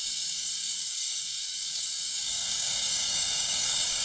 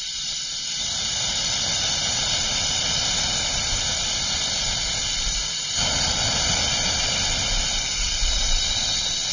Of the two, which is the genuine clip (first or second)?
second